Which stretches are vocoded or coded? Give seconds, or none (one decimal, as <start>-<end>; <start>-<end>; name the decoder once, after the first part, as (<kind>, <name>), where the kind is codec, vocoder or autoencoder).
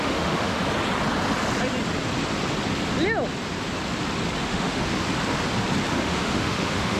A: 0.0-0.6 (autoencoder, DAC-VAE); 4.4-4.9; 5.9-7.0